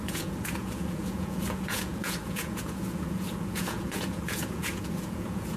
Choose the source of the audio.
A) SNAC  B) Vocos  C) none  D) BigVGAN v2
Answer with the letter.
B